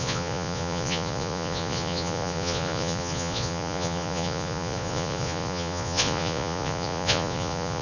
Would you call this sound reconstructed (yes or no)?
yes